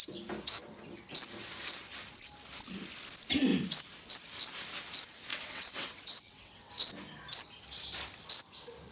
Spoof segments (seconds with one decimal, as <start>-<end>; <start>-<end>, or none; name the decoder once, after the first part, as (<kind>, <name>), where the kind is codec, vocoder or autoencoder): 5.3-6.7 (vocoder, WaveNeXt)

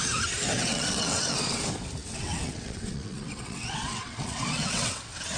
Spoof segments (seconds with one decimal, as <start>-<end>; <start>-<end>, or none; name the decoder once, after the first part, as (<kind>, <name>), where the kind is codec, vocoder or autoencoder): 0.6-1.6 (vocoder, WaveNeXt); 2.0-5.0

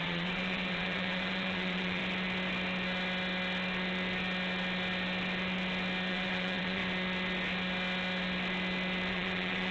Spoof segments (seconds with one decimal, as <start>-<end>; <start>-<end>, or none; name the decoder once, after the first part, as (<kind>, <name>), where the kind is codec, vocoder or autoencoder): 0.0-2.0 (vocoder, WaveNeXt); 6.1-6.8; 9.1-9.7

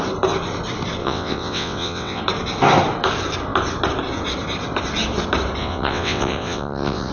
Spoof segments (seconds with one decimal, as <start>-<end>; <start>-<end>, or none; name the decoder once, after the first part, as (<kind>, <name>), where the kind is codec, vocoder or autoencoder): 1.0-2.2 (vocoder, WaveNeXt); 5.6-7.1

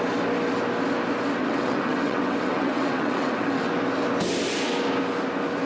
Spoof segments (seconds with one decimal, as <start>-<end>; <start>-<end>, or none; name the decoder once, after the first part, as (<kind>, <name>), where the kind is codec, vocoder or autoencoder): 1.4-3.6 (vocoder, WaveNeXt)

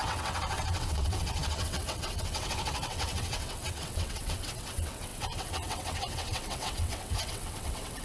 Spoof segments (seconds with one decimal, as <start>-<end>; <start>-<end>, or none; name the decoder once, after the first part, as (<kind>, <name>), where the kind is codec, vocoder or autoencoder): 0.0-8.0 (vocoder, WaveNeXt)

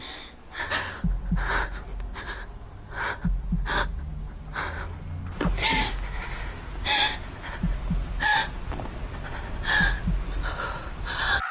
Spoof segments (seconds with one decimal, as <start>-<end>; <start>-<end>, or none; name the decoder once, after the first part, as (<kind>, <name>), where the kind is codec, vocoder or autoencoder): none